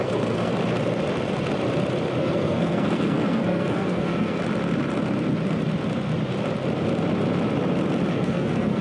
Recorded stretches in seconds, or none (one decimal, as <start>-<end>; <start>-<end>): 0.5-2.2; 4.4-8.1